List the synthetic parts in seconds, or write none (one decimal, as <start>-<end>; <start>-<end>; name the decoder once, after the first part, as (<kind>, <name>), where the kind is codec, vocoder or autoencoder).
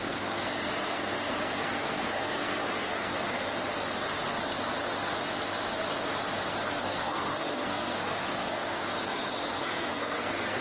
0.0-3.1 (codec, SNAC); 6.5-10.6